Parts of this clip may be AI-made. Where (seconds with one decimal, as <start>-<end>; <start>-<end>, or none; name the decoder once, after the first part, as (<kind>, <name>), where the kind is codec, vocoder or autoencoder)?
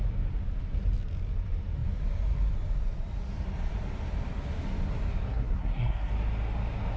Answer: 5.3-6.1 (codec, SNAC)